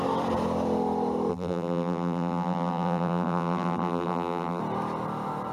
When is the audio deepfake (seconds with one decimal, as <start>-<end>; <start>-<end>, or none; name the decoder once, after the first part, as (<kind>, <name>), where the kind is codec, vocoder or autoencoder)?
1.3-4.6 (vocoder, BigVGAN v2)